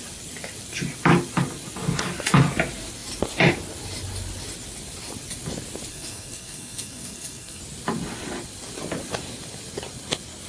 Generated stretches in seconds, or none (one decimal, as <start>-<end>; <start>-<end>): 5.9-7.6